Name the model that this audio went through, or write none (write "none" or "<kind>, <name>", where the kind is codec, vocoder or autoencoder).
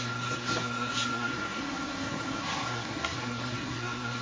codec, SNAC